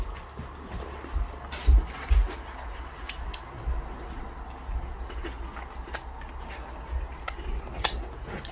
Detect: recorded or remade recorded